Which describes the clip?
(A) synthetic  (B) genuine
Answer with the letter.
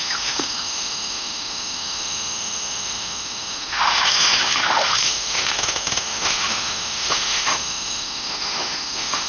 A